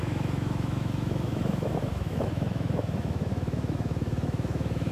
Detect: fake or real fake